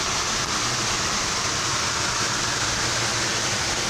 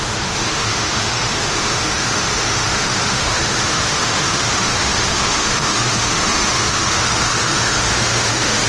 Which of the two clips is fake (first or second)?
second